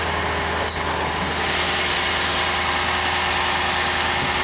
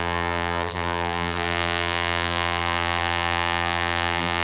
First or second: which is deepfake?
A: second